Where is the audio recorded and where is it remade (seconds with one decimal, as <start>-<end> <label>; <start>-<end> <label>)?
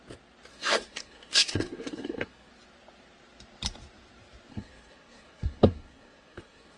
0.0-0.5 recorded; 0.5-2.5 remade; 2.5-4.5 recorded; 4.5-6.8 remade